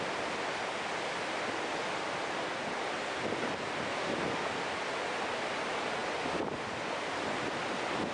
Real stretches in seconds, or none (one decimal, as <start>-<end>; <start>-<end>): 0.0-8.1